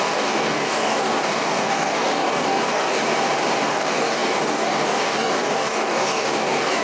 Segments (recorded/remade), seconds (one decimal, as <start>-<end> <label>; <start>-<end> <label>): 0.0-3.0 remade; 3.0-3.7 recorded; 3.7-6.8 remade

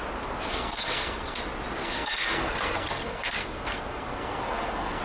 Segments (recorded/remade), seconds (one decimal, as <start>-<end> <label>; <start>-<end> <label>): 0.0-0.5 recorded; 0.5-1.4 remade; 1.4-1.8 recorded; 1.8-5.0 remade

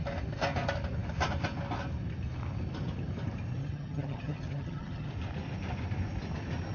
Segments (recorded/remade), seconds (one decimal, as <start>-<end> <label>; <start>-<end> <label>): 0.0-3.6 recorded; 3.6-5.1 remade; 5.1-6.7 recorded

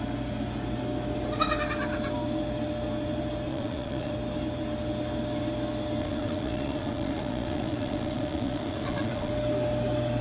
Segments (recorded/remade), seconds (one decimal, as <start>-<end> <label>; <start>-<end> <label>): 0.0-3.5 recorded; 3.5-4.1 remade; 4.1-6.0 recorded; 6.0-9.3 remade; 9.3-10.2 recorded

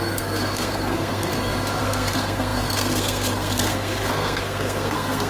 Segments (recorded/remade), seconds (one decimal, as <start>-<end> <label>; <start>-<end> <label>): 0.0-1.3 remade; 1.3-1.8 recorded; 1.8-5.3 remade